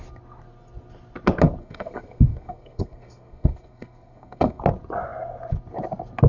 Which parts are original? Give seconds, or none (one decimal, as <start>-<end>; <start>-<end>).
0.0-1.6; 4.6-6.3